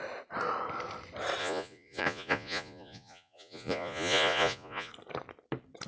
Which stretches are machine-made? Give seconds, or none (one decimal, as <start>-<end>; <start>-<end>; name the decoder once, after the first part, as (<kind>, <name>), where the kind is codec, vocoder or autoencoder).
1.4-4.9 (vocoder, Vocos)